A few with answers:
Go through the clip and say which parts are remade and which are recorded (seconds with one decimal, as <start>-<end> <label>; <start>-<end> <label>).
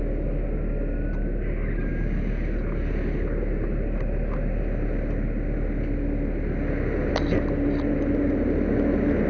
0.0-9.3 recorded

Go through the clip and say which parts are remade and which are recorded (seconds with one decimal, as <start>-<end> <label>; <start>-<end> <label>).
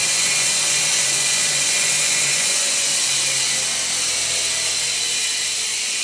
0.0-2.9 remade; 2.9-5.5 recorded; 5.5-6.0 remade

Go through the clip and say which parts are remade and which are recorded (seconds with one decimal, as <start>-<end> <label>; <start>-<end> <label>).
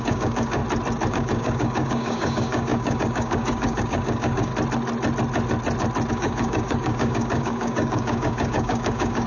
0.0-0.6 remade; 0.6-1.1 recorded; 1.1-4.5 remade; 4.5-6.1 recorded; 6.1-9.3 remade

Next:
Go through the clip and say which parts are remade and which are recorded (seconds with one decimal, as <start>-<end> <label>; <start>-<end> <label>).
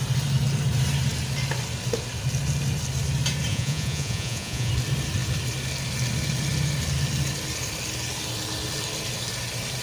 0.0-3.5 recorded; 3.5-4.7 remade; 4.7-9.8 recorded